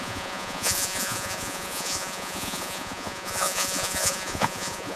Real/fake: fake